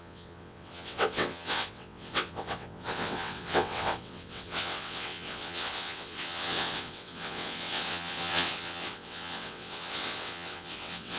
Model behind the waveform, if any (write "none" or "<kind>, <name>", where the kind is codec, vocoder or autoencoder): vocoder, WaveNeXt